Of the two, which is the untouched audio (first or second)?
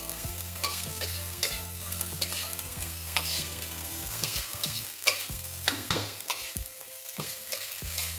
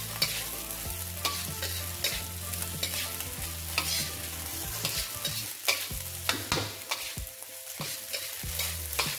second